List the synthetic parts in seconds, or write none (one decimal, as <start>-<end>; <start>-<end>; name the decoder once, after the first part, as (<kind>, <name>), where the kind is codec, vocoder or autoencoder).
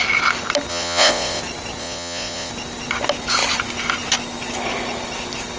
0.7-1.4 (vocoder, Vocos); 1.8-2.5